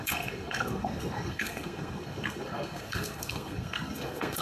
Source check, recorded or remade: remade